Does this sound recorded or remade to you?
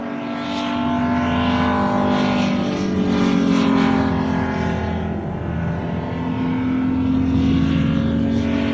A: recorded